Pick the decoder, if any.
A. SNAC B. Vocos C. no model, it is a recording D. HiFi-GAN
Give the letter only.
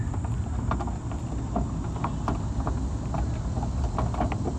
C